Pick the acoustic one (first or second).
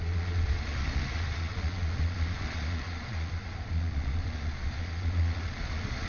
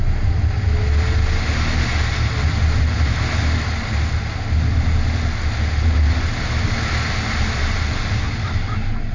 second